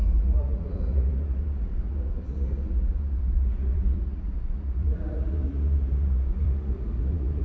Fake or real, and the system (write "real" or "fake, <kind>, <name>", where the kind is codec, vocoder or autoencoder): fake, vocoder, Vocos